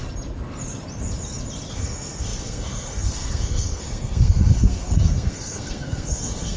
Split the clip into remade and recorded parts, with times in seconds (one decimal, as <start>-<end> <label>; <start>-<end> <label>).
0.0-1.7 recorded; 1.7-6.6 remade